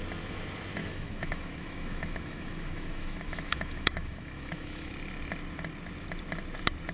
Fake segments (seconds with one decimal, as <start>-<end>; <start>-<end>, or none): 0.8-4.9